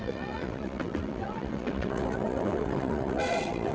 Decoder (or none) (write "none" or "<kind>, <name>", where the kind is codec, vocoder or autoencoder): vocoder, WaveNeXt